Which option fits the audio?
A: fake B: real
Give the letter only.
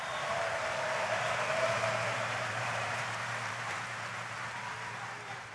A